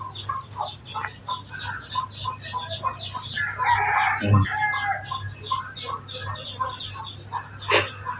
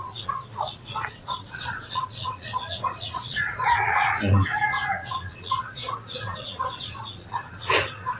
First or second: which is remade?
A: second